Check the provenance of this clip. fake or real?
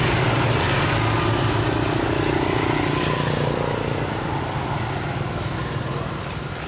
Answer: real